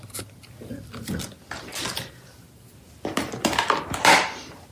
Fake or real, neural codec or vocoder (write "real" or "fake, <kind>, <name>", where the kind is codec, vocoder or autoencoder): real